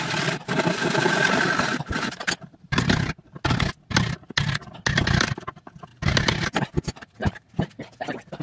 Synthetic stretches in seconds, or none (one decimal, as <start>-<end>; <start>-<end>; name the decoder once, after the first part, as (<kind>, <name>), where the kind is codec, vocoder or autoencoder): 0.8-3.4 (vocoder, BigVGAN v2); 5.9-7.5